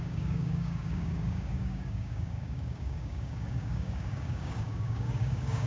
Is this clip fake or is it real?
fake